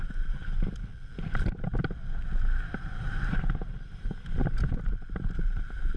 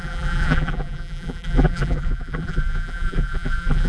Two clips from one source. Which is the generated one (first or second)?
second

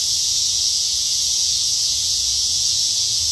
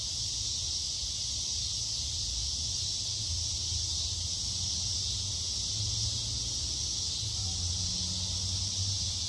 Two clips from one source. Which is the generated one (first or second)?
first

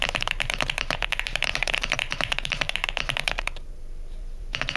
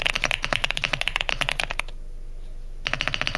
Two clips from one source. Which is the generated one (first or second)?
first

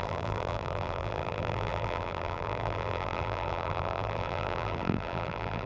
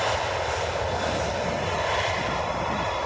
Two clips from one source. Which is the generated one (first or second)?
first